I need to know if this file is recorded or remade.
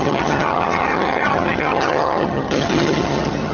remade